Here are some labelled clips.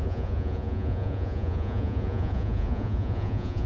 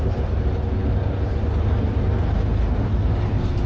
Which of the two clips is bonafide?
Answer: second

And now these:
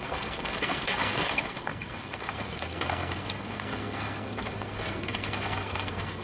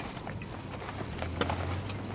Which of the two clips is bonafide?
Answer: second